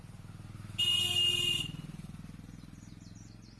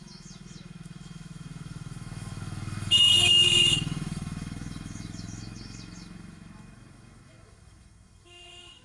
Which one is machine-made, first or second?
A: second